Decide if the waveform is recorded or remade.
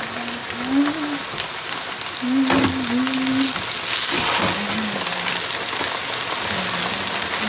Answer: recorded